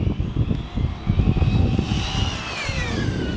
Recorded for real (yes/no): yes